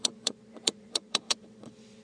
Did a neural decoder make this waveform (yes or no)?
yes